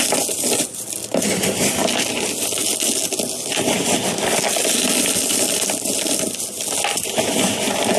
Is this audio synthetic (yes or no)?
no